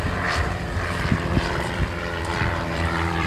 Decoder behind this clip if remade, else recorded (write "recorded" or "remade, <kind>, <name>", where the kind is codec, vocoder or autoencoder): remade, vocoder, BigVGAN v2